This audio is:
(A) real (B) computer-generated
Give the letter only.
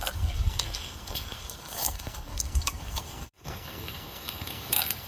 B